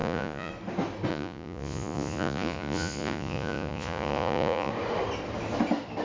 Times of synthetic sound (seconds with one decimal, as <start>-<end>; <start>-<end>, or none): 0.0-0.5; 1.1-4.7